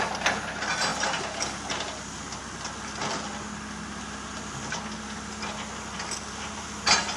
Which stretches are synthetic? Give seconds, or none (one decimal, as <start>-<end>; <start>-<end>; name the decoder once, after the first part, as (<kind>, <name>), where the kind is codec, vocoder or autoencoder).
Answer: none